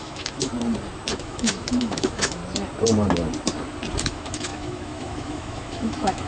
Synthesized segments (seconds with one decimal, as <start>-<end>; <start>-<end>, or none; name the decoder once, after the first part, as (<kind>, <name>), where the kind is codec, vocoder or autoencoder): 0.0-0.5 (autoencoder, DAC-VAE); 1.1-2.4; 4.0-6.3